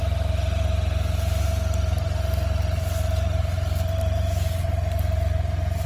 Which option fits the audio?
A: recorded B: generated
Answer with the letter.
A